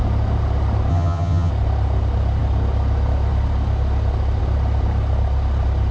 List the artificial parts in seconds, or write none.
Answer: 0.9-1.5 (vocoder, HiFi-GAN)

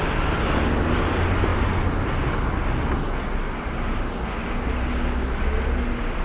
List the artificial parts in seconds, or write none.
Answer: none

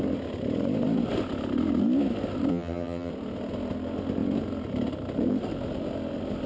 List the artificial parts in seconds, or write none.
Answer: 2.5-3.1 (vocoder, HiFi-GAN)

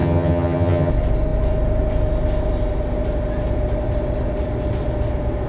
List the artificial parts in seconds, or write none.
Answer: 0.0-0.9 (vocoder, HiFi-GAN)